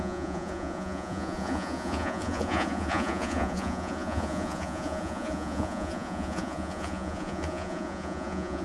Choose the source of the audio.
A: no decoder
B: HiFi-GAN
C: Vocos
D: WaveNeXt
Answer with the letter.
C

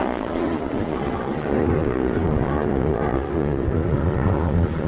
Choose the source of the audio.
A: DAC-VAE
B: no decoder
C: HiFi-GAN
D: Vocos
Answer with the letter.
D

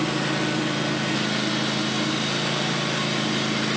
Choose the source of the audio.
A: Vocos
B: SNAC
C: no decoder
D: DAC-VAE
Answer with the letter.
C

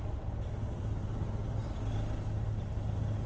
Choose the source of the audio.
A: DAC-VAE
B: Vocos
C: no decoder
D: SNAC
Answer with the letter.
C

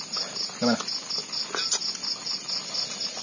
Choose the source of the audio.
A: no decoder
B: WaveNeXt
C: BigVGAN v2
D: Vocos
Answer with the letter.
A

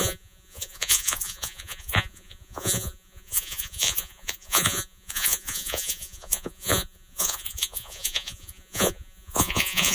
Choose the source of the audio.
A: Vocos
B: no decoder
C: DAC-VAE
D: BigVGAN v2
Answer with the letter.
A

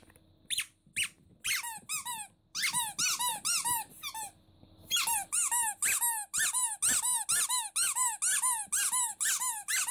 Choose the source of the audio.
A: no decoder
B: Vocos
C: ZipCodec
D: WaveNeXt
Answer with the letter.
A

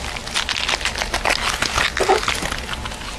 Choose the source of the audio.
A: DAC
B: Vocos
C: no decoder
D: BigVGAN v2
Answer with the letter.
C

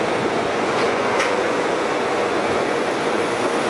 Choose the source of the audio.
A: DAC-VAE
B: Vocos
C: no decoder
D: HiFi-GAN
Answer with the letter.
B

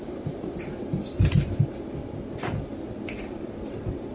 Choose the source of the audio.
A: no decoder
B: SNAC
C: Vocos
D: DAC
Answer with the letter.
A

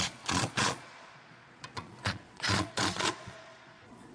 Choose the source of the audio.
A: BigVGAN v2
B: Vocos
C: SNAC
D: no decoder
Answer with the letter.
B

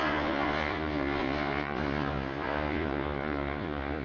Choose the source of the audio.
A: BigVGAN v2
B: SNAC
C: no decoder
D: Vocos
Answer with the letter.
D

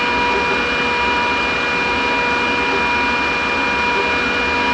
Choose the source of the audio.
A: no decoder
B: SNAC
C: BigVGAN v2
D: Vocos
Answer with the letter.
A